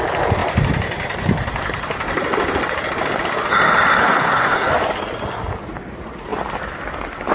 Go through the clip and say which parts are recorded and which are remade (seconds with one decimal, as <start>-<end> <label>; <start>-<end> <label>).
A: 0.0-4.0 recorded; 4.0-4.7 remade; 4.7-7.3 recorded